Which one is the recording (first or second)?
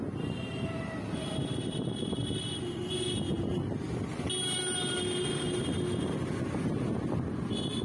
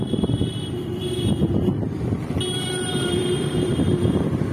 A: first